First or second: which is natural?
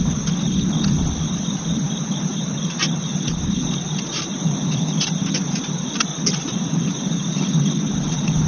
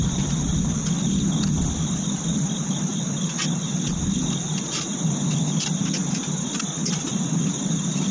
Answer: second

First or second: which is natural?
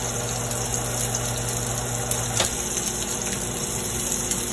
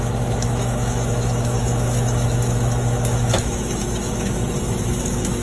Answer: first